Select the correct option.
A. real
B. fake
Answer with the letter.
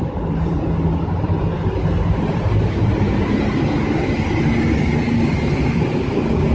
A